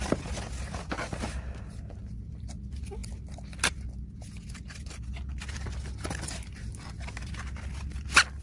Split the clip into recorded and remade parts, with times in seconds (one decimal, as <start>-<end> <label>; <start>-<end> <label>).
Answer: 0.0-8.4 recorded